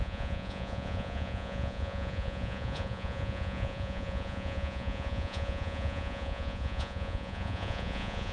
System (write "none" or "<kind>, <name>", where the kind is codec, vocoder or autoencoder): vocoder, Vocos